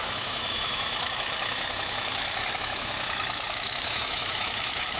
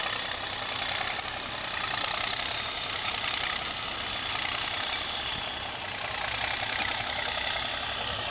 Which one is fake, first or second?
first